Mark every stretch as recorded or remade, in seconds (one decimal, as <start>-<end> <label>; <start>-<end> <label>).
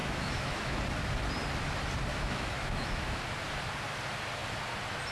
0.0-0.8 remade; 0.8-2.1 recorded; 2.1-3.2 remade; 3.2-5.1 recorded